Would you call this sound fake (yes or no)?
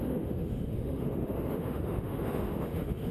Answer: yes